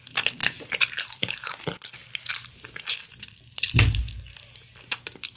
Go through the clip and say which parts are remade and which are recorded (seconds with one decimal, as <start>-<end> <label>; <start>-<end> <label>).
0.0-0.4 recorded; 0.4-1.3 remade; 1.3-2.0 recorded; 2.0-4.0 remade; 4.0-5.4 recorded